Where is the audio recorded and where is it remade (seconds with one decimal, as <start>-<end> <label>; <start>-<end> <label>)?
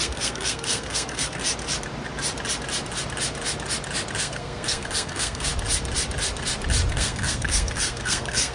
0.0-1.4 remade; 1.4-4.2 recorded; 4.2-5.5 remade; 5.5-6.9 recorded; 6.9-8.5 remade